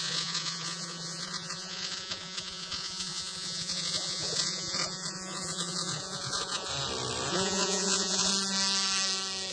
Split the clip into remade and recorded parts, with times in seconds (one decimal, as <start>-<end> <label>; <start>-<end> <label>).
0.0-6.7 remade; 6.7-7.3 recorded; 7.3-8.3 remade; 8.3-9.5 recorded